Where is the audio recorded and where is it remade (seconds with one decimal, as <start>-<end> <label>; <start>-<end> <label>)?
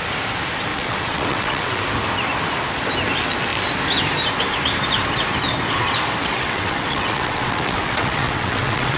0.0-0.7 recorded; 0.7-1.8 remade; 1.8-6.2 recorded; 6.2-9.0 remade